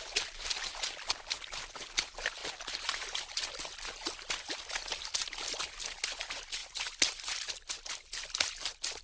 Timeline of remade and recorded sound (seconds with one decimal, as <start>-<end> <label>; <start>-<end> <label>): 0.0-9.0 recorded